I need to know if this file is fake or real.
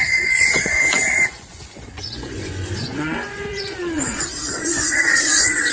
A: fake